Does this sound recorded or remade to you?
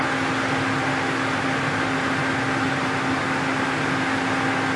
recorded